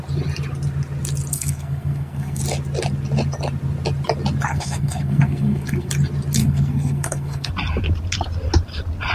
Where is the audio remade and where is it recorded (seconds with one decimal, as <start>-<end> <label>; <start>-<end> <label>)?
0.0-1.3 recorded; 1.3-2.4 remade; 2.4-4.5 recorded; 4.5-5.9 remade; 5.9-6.4 recorded; 6.4-7.5 remade; 7.5-9.1 recorded